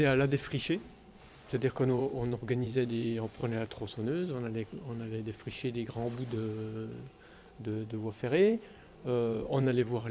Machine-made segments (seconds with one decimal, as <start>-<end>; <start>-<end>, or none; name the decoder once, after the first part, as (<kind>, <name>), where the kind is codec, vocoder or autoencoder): 0.0-3.4 (vocoder, Vocos); 7.5-10.1